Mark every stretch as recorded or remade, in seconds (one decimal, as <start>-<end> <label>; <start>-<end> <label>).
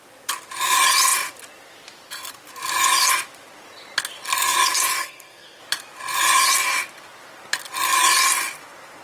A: 0.0-5.0 recorded; 5.0-5.6 remade; 5.6-9.0 recorded